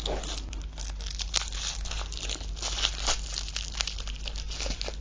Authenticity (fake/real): real